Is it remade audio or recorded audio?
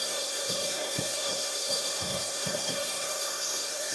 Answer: remade